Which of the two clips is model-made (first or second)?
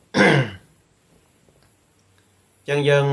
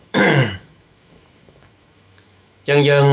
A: second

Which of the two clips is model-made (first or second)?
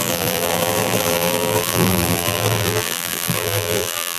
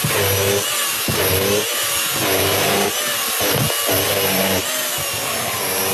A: first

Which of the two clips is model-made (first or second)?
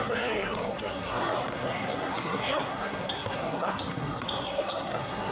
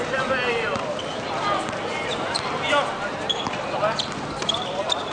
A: first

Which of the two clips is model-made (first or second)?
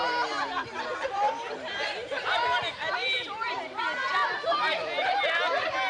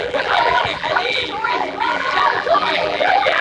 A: second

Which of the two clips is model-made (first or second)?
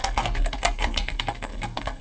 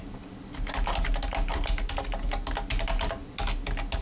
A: first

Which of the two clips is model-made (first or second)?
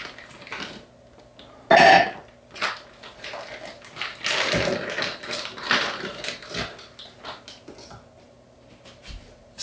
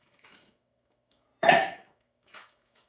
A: second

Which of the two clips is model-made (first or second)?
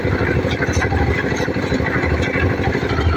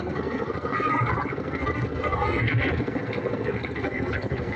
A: second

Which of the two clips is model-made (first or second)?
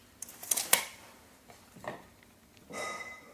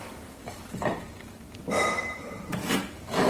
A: second